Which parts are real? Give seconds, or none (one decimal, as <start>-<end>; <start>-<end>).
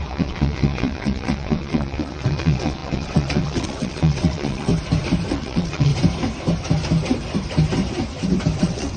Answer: 4.7-5.3; 5.9-8.6